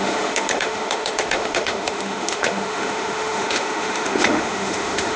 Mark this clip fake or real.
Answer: fake